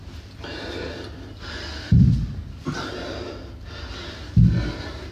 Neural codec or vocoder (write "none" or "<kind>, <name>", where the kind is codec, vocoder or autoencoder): none